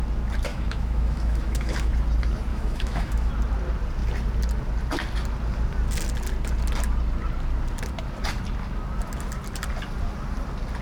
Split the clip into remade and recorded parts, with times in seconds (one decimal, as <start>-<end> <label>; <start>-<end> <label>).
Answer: 0.0-0.5 recorded; 0.5-1.9 remade; 1.9-2.5 recorded; 2.5-3.3 remade; 3.3-10.8 recorded